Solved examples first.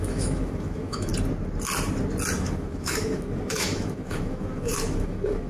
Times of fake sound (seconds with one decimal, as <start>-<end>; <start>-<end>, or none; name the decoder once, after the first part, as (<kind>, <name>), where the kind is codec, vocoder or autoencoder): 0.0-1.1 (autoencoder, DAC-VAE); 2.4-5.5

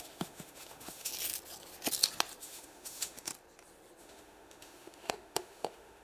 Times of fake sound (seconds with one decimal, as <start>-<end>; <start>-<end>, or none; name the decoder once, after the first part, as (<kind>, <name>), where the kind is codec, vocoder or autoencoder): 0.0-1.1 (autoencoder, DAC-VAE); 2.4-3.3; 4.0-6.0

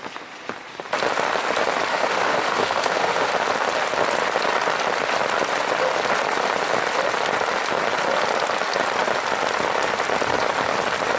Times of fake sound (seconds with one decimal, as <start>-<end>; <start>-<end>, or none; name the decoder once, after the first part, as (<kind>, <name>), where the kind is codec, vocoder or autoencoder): 1.9-3.3 (autoencoder, DAC-VAE)